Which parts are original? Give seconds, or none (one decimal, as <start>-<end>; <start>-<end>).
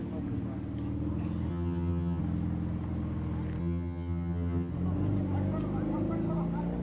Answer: 0.0-1.5; 2.2-3.6; 4.7-6.8